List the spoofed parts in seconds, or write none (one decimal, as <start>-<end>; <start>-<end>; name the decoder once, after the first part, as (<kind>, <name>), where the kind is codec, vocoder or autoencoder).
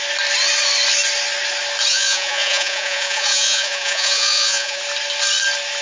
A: 1.9-4.8 (vocoder, Vocos)